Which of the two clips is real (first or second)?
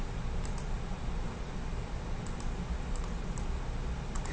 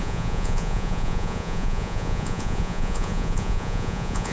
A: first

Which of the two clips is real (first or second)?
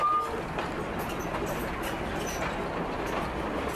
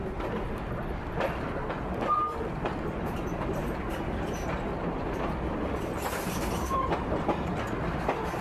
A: first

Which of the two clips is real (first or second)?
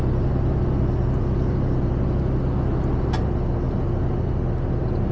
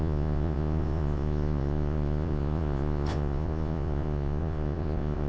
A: first